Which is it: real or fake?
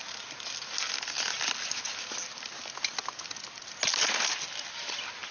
real